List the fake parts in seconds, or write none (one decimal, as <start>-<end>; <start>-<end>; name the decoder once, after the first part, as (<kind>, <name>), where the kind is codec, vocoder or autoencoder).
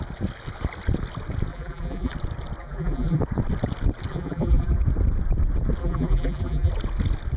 1.5-2.1 (vocoder, BigVGAN v2); 2.6-3.2; 4.1-4.8; 5.8-6.7